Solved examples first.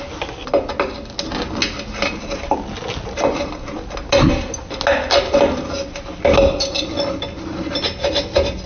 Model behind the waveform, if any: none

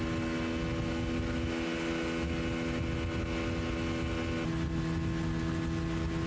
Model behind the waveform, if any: none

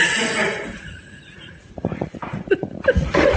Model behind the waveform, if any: vocoder, Vocos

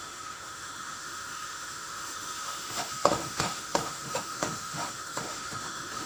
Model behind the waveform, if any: autoencoder, DAC-VAE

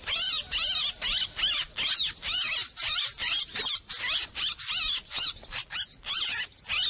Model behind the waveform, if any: none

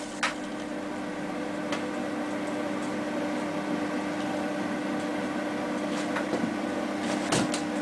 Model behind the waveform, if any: none